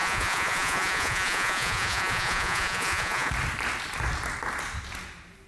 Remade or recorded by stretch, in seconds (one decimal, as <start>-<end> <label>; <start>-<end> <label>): 0.0-3.3 remade; 3.3-5.5 recorded